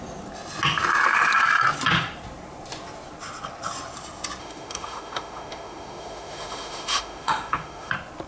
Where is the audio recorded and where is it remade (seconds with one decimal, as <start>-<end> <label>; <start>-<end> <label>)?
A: 0.0-4.4 recorded; 4.4-7.9 remade; 7.9-8.3 recorded